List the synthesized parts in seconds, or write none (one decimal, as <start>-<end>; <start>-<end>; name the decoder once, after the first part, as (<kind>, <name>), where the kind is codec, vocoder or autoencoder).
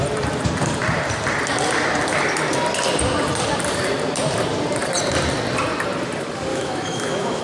6.5-7.4 (autoencoder, DAC-VAE)